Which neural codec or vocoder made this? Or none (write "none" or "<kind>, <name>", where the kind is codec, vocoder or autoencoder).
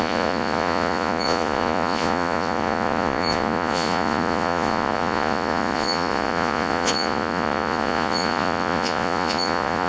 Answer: vocoder, Vocos